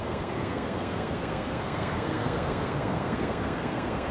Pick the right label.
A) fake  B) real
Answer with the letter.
A